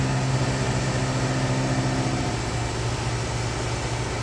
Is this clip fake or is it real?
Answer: real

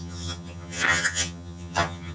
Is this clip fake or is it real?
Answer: fake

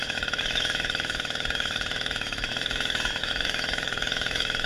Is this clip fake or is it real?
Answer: fake